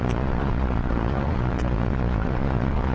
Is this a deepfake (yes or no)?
yes